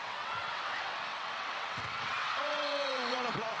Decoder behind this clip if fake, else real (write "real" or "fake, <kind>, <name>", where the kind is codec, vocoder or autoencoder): fake, vocoder, WaveNeXt